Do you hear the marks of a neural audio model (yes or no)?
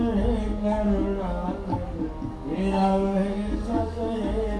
yes